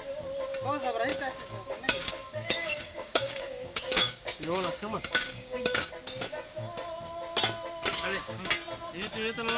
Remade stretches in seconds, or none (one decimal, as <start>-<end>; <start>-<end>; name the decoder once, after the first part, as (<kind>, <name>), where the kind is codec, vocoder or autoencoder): 1.1-5.9 (codec, DAC); 7.9-8.5